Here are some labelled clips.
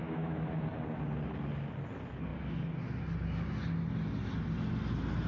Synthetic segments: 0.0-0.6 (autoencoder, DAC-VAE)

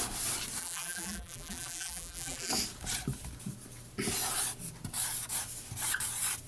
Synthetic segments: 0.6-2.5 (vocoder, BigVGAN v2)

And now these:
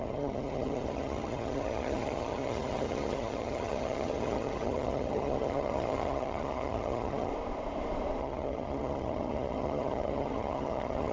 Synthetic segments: 0.0-7.3 (vocoder, HiFi-GAN); 8.2-11.1